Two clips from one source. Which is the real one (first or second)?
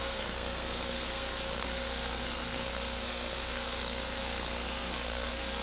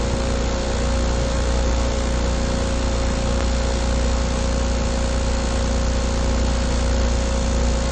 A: second